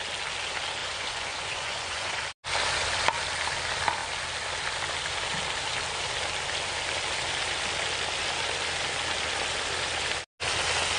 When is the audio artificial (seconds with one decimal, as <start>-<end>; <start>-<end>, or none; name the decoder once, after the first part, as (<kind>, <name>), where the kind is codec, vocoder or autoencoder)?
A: 0.8-2.2 (vocoder, Vocos)